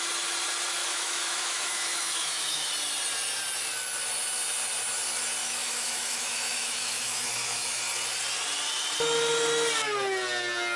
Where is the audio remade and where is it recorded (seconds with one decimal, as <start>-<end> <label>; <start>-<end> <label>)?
0.0-0.8 recorded; 0.8-2.7 remade; 2.7-5.4 recorded; 5.4-7.8 remade; 7.8-10.8 recorded